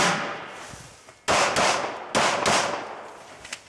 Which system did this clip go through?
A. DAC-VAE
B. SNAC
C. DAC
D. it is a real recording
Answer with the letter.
D